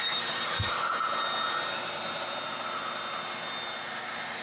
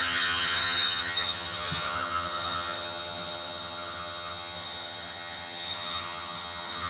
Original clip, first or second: first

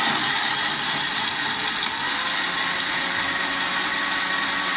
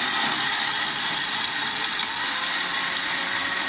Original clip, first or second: first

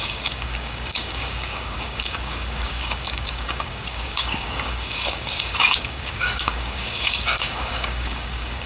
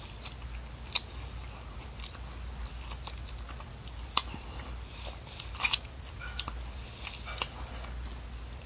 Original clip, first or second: second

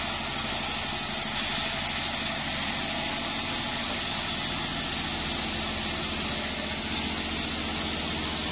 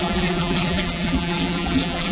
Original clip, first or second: first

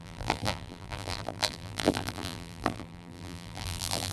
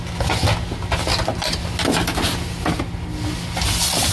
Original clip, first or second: second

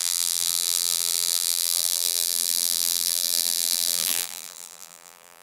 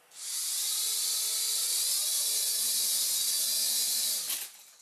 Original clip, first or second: second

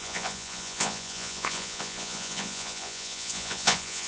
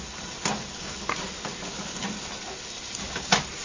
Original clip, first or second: second